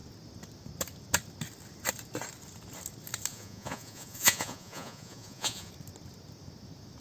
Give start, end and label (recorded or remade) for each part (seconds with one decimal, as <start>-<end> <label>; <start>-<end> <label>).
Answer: 0.0-3.3 recorded; 3.3-5.7 remade; 5.7-7.0 recorded